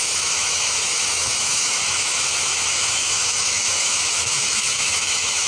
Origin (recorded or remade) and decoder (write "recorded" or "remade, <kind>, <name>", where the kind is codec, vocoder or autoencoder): remade, autoencoder, DAC-VAE